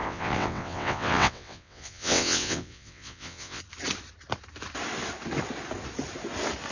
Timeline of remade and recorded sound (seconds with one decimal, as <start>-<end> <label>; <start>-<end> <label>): 0.0-3.6 remade; 3.6-6.7 recorded